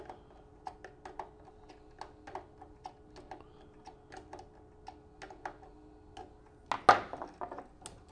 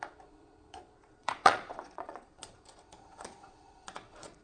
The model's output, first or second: second